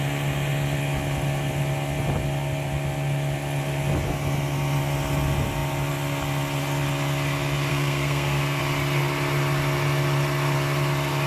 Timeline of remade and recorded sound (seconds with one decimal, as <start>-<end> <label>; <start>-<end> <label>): 0.0-7.7 recorded; 7.7-8.6 remade; 8.6-11.3 recorded